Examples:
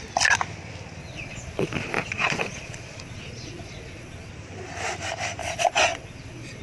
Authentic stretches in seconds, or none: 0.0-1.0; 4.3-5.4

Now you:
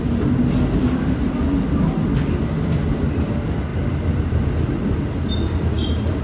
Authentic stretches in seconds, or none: 0.0-6.2

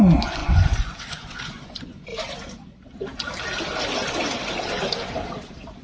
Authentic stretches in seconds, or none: 2.1-5.8

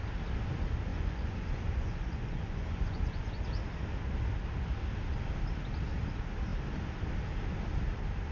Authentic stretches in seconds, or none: 0.0-0.9; 3.4-8.3

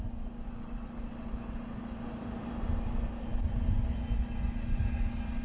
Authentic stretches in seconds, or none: 0.0-5.4